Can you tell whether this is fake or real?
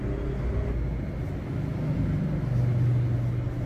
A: real